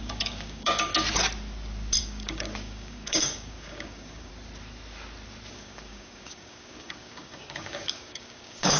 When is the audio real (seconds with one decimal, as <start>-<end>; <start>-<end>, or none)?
0.9-2.0; 4.3-5.5